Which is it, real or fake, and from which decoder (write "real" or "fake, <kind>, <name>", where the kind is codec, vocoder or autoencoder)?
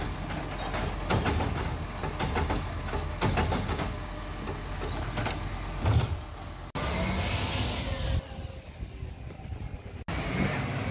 real